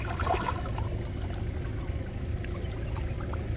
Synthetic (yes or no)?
no